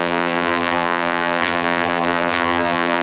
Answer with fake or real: fake